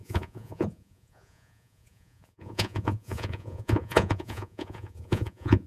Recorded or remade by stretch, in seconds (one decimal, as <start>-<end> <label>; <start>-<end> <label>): 0.0-5.7 remade